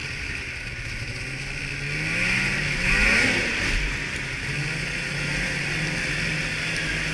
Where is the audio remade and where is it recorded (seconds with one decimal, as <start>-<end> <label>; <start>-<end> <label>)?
0.0-7.1 recorded